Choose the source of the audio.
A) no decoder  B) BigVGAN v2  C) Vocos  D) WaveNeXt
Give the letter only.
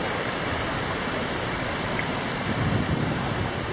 B